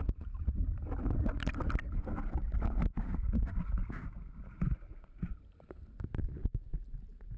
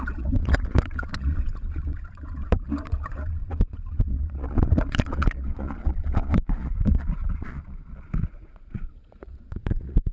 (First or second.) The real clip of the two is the first